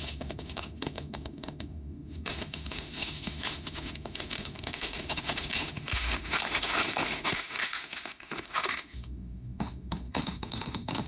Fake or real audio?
fake